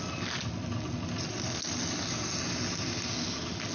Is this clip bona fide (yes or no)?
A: yes